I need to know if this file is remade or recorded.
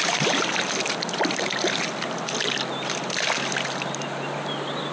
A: recorded